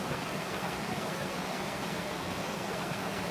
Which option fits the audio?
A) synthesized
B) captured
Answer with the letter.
A